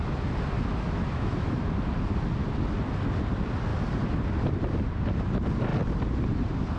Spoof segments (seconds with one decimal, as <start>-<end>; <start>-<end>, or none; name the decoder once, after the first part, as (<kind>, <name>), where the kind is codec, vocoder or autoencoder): 0.7-1.6 (autoencoder, DAC-VAE)